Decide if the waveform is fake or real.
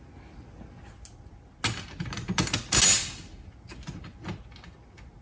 real